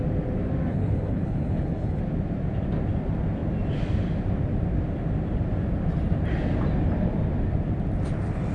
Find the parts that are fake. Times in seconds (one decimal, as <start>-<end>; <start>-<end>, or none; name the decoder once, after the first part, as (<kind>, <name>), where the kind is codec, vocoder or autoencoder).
0.7-2.0 (codec, HILCodec)